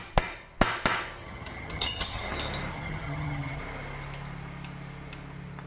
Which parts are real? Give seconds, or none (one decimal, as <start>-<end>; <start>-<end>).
0.0-1.2; 2.3-2.7; 3.6-5.7